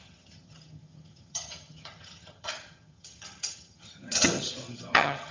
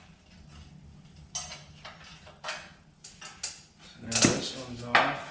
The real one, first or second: second